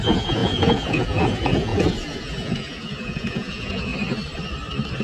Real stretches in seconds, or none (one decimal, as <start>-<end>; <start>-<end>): 3.9-5.0